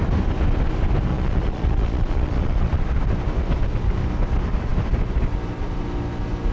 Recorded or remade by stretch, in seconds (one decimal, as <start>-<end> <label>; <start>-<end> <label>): 0.0-1.1 recorded; 1.1-2.8 remade; 2.8-6.5 recorded